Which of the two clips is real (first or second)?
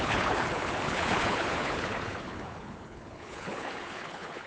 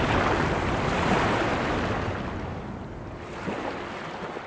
second